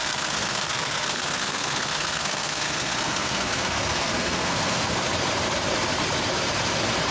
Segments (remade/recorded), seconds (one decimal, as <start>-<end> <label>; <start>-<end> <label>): 0.0-5.0 remade; 5.0-7.1 recorded